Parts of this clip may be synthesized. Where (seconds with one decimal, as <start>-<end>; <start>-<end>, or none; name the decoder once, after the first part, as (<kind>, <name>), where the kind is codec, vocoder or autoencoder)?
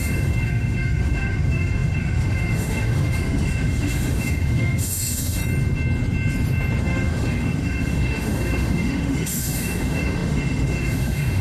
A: 0.0-5.4 (autoencoder, DAC-VAE); 6.8-11.4